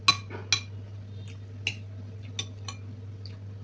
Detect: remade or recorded recorded